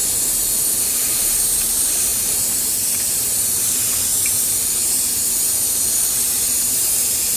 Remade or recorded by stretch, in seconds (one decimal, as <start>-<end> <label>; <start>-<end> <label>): 0.0-0.8 recorded; 0.8-7.4 remade